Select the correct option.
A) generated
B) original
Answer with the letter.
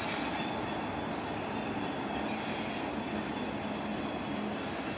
B